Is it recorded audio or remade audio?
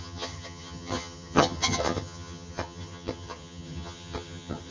remade